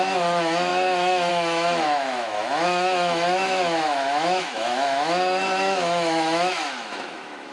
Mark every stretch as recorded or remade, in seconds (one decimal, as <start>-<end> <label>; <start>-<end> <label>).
0.0-7.5 remade